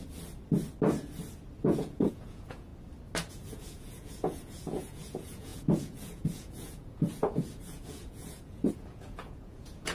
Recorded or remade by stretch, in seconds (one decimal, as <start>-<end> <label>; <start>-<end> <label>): 0.0-1.6 recorded; 1.6-2.7 remade; 2.7-3.3 recorded; 3.3-9.9 remade